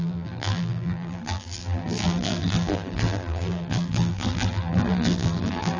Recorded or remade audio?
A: remade